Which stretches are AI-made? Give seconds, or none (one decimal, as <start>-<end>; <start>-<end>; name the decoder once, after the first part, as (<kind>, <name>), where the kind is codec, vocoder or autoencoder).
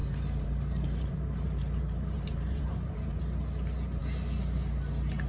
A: 0.0-3.2 (vocoder, BigVGAN v2)